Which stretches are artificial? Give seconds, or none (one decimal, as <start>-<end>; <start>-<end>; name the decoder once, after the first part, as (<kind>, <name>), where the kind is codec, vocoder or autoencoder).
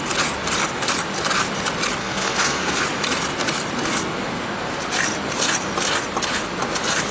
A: 2.0-2.8 (codec, SNAC)